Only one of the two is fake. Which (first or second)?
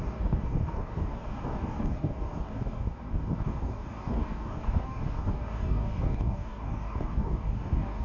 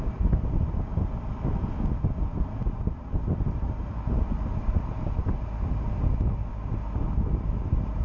first